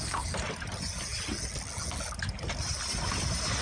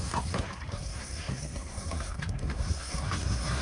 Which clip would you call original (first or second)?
first